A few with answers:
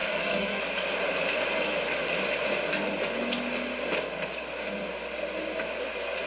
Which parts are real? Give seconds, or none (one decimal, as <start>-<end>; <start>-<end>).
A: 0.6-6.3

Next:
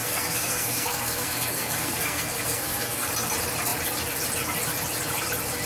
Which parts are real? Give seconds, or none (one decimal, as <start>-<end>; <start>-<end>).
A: 3.1-5.7

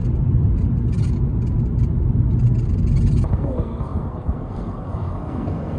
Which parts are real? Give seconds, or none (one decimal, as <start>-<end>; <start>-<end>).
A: 0.0-3.3

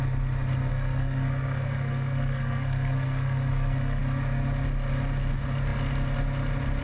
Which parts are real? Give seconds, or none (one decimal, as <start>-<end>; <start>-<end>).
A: 0.0-0.7; 4.0-6.8

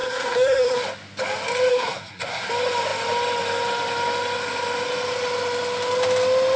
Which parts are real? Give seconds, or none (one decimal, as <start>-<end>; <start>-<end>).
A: 0.8-1.7; 2.5-6.6

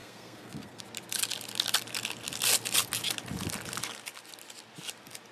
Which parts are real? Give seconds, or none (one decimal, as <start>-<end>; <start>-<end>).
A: 0.8-5.3

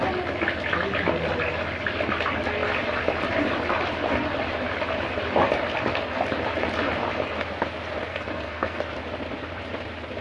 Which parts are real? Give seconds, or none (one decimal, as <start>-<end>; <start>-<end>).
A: 0.0-8.1; 8.8-10.2

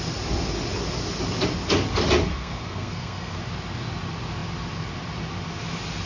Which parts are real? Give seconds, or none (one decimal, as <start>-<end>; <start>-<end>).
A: 0.0-2.3; 3.4-6.1